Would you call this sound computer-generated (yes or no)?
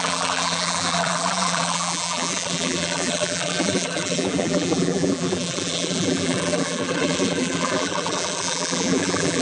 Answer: yes